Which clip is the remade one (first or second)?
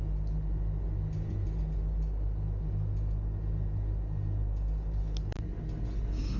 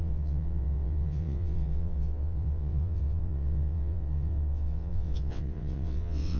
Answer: second